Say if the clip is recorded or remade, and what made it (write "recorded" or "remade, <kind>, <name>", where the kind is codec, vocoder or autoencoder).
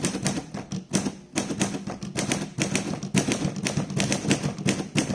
recorded